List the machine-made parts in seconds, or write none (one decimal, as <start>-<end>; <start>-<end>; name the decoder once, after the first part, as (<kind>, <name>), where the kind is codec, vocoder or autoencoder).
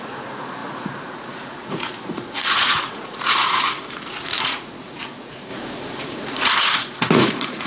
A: 0.0-7.7 (vocoder, Vocos)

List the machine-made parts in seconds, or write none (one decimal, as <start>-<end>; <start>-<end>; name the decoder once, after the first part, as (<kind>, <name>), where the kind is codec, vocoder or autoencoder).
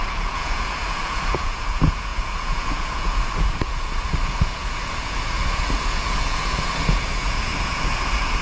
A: 0.0-8.4 (vocoder, Vocos)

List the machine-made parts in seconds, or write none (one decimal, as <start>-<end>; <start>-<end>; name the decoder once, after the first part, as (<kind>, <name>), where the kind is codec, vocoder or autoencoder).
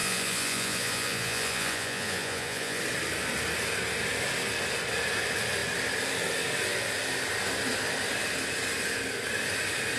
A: 0.0-2.8 (vocoder, Vocos)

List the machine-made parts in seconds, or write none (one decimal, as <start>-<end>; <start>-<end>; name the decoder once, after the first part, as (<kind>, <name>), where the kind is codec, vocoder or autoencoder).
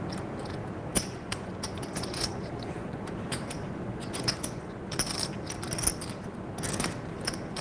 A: 0.6-4.9 (vocoder, Vocos)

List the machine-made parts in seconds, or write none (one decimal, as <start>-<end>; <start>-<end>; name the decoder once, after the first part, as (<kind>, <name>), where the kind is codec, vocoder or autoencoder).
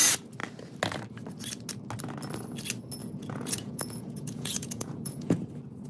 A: 3.0-5.4 (vocoder, Vocos)